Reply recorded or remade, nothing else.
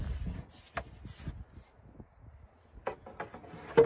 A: recorded